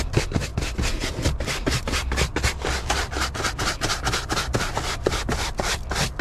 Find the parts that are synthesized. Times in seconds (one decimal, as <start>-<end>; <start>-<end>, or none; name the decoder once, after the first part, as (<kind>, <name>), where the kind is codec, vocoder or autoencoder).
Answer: none